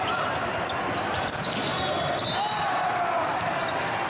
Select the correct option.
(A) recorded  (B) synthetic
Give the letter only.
A